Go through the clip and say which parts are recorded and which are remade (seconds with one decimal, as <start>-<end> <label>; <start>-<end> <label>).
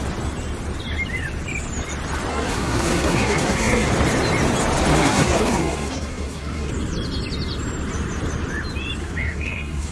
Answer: 0.0-2.3 recorded; 2.3-3.9 remade; 3.9-4.9 recorded; 4.9-6.7 remade; 6.7-9.0 recorded; 9.0-9.9 remade